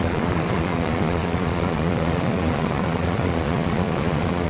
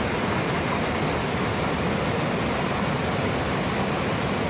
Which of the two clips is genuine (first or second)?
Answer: second